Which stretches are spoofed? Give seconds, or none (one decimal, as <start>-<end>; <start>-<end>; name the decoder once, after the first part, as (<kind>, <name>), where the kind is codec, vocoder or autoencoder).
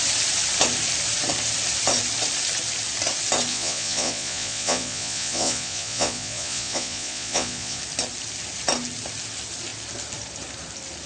3.5-7.8 (vocoder, Vocos)